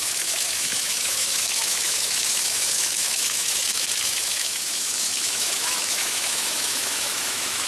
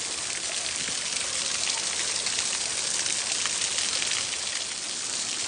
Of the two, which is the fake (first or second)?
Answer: first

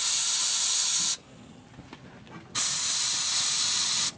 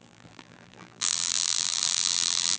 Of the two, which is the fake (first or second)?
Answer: second